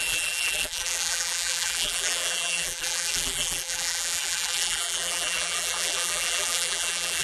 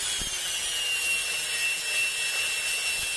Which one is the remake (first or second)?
first